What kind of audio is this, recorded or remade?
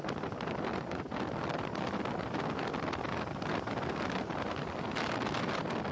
recorded